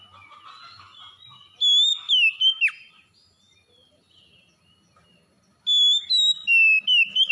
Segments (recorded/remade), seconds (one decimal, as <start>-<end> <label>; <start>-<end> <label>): 0.0-7.3 recorded